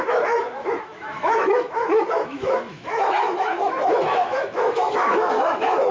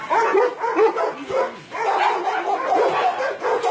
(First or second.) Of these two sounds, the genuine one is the second